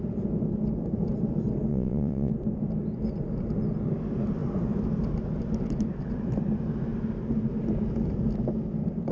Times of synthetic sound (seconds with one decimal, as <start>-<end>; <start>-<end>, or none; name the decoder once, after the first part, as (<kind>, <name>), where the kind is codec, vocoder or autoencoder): 1.7-2.3 (vocoder, WaveNeXt)

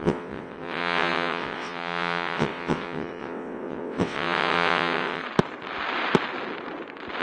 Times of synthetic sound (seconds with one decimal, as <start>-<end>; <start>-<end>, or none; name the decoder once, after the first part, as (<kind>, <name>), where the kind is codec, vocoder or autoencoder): 0.0-5.2 (vocoder, WaveNeXt)